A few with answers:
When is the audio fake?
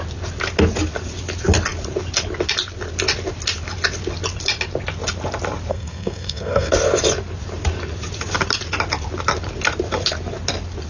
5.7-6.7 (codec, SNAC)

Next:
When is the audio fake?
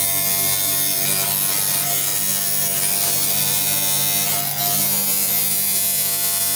none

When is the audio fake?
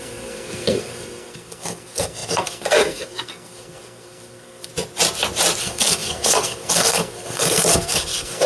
0.0-4.7 (codec, SNAC); 5.6-8.5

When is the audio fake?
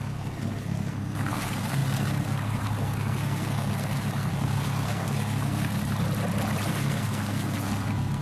0.0-5.8 (codec, SNAC); 6.7-8.2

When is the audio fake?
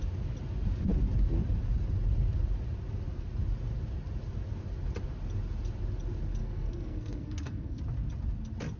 6.4-7.8 (codec, SNAC)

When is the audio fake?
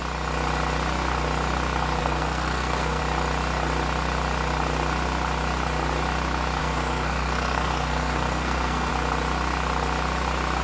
2.0-3.0 (codec, SNAC); 6.6-8.9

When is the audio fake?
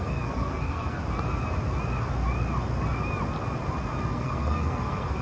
0.0-1.0 (codec, SNAC); 4.1-5.2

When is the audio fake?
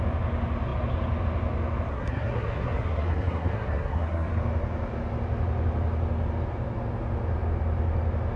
1.9-4.3 (codec, SNAC)